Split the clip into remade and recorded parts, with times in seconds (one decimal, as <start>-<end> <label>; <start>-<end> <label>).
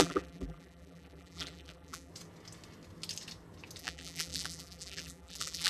0.0-2.1 remade; 2.1-3.8 recorded; 3.8-5.7 remade